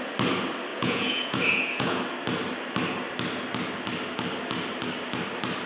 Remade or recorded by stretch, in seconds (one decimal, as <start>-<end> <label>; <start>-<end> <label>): 0.0-0.7 recorded; 0.7-2.0 remade; 2.0-5.7 recorded